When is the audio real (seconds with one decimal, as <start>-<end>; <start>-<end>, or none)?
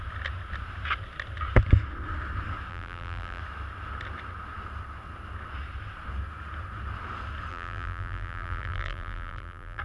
0.0-2.7; 3.4-7.5